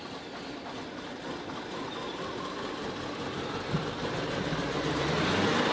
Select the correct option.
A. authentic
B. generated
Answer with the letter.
A